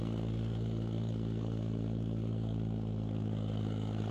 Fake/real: fake